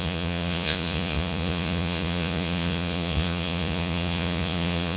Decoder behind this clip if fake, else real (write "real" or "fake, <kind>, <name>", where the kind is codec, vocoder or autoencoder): fake, vocoder, Vocos